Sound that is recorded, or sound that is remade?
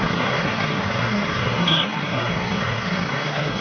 remade